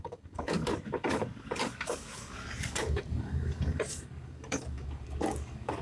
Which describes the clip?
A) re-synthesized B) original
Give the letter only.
A